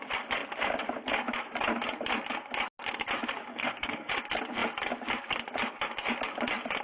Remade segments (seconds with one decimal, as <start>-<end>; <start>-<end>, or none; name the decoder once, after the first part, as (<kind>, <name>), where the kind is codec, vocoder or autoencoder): 3.5-4.1 (codec, SNAC)